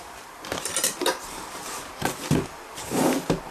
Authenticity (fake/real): fake